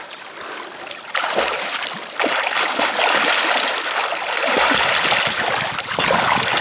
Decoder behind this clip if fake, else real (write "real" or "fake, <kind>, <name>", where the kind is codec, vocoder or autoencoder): real